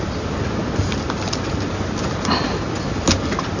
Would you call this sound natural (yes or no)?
yes